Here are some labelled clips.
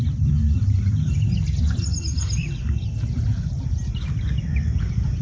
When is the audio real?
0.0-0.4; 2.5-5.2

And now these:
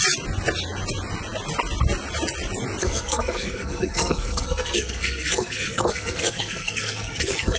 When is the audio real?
0.0-2.8

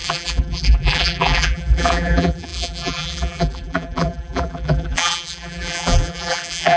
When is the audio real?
none

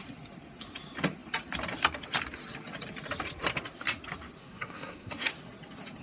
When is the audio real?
0.0-4.4; 5.3-6.0